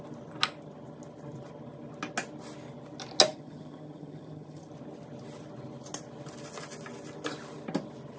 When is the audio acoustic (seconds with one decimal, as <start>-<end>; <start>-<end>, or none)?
0.0-3.3; 4.7-8.2